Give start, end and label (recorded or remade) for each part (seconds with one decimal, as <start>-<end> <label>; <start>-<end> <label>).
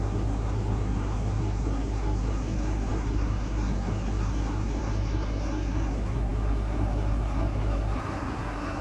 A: 0.0-8.8 remade